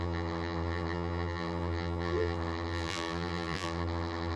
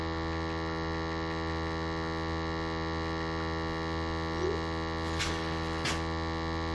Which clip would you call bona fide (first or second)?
second